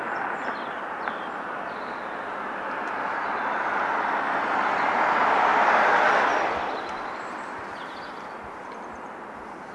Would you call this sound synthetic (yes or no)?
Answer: no